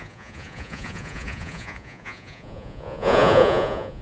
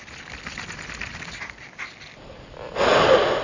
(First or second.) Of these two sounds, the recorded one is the second